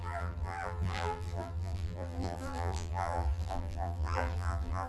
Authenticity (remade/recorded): remade